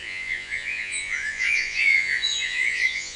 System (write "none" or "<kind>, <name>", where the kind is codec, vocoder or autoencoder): vocoder, Vocos